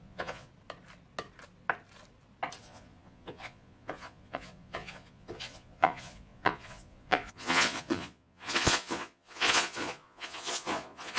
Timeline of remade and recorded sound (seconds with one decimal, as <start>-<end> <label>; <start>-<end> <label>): 0.0-0.5 remade; 0.5-2.6 recorded; 2.6-11.2 remade